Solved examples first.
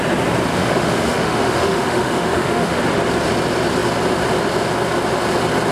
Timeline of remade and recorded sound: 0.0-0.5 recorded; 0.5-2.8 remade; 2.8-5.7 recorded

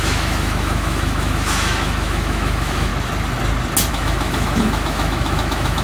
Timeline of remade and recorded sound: 0.0-2.9 remade; 2.9-3.9 recorded; 3.9-5.8 remade

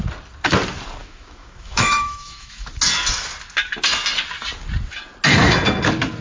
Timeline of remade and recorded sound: 0.0-1.0 recorded; 1.0-2.7 remade; 2.7-6.2 recorded

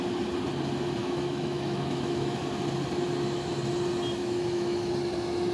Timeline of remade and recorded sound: 0.0-1.0 recorded; 1.0-2.4 remade; 2.4-4.2 recorded; 4.2-4.9 remade; 4.9-5.5 recorded